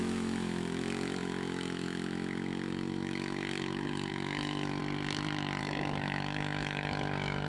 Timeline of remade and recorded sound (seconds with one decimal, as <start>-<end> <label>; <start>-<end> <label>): 0.0-4.8 remade; 4.8-5.6 recorded; 5.6-7.5 remade